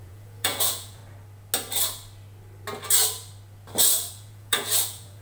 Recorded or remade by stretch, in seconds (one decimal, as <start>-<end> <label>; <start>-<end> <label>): 0.0-1.0 remade; 1.0-4.1 recorded; 4.1-5.2 remade

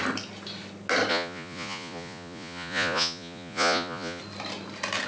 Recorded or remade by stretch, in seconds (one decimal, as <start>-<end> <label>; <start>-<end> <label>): 0.0-1.1 recorded; 1.1-4.2 remade; 4.2-5.1 recorded

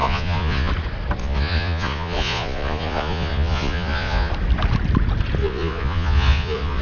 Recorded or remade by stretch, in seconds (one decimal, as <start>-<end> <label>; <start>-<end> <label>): 0.0-0.7 remade; 0.7-1.2 recorded; 1.2-4.3 remade; 4.3-5.4 recorded; 5.4-6.8 remade

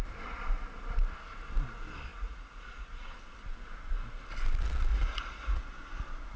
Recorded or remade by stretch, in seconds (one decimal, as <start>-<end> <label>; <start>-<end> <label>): 0.0-2.1 recorded; 2.1-3.1 remade; 3.1-4.9 recorded; 4.9-5.6 remade; 5.6-6.4 recorded